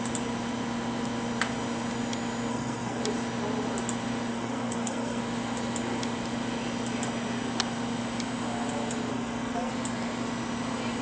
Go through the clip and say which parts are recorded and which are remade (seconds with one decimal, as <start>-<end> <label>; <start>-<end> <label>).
0.0-2.5 recorded; 2.5-3.0 remade; 3.0-4.3 recorded; 4.3-5.2 remade; 5.2-9.1 recorded; 9.1-9.7 remade; 9.7-11.0 recorded